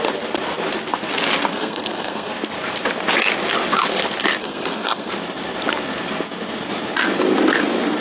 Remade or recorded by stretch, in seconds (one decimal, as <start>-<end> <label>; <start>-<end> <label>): 0.0-1.5 recorded; 1.5-2.3 remade; 2.3-4.4 recorded; 4.4-5.1 remade; 5.1-8.0 recorded